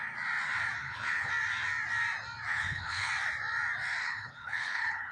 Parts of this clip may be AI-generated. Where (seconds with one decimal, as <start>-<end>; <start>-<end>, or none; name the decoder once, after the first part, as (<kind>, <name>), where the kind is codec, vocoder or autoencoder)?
0.8-1.3 (codec, HILCodec); 2.5-3.1; 4.0-5.1